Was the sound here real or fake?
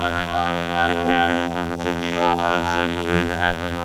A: fake